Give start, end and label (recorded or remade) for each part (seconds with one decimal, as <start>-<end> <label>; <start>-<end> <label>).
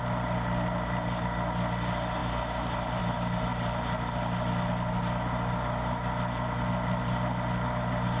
0.0-8.2 recorded